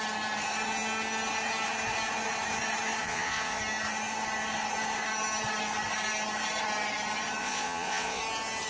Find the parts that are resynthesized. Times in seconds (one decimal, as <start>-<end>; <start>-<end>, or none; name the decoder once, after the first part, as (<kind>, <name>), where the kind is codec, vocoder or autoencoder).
3.0-3.6 (vocoder, Vocos); 7.4-8.2